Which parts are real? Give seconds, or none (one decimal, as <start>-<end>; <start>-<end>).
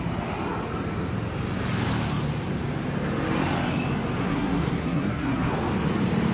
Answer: 0.0-4.2; 5.6-6.3